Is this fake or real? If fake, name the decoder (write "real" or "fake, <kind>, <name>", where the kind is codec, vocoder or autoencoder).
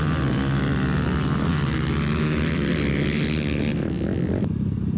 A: real